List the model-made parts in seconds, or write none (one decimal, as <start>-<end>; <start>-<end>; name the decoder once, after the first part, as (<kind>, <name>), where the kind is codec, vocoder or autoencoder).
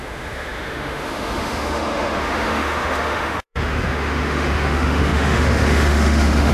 0.0-6.5 (autoencoder, DAC-VAE)